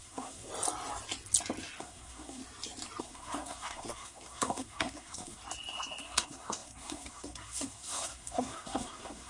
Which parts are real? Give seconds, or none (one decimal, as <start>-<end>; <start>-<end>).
0.5-1.8; 2.4-3.0; 5.4-6.0